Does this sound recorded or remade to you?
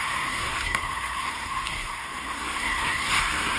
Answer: remade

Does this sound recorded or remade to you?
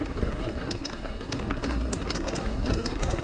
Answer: remade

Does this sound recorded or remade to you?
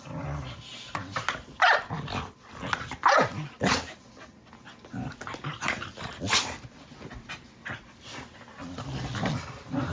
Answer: recorded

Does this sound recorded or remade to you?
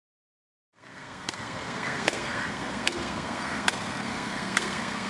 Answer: remade